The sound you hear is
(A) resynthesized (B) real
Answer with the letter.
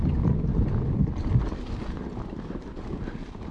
B